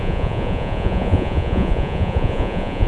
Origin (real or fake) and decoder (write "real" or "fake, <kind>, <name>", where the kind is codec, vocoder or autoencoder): fake, vocoder, Vocos